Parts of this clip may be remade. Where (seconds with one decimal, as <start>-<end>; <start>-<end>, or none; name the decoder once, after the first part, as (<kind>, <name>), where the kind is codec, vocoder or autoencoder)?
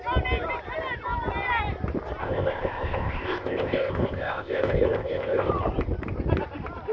2.2-5.5 (codec, ZipCodec)